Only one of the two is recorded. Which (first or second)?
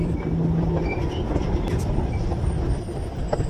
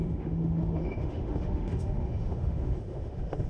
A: first